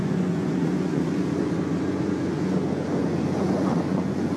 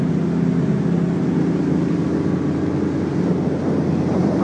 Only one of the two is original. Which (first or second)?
second